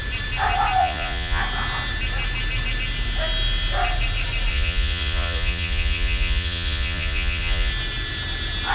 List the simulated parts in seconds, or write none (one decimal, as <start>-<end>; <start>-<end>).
0.8-1.4; 4.5-7.7